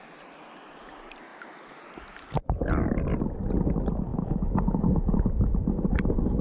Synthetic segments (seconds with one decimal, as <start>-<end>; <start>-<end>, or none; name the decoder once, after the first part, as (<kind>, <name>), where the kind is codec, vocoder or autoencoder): 4.1-4.6 (autoencoder, DAC-VAE)